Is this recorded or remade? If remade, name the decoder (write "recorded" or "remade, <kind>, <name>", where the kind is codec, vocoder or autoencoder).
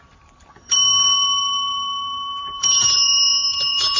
remade, vocoder, BigVGAN v2